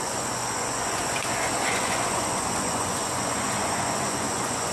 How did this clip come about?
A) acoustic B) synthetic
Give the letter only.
B